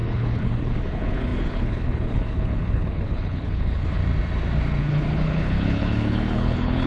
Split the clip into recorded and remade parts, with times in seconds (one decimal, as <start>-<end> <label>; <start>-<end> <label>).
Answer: 0.0-4.0 remade; 4.0-4.8 recorded; 4.8-6.9 remade